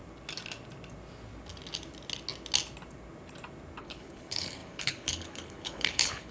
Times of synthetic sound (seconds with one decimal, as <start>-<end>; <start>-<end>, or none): 3.8-6.3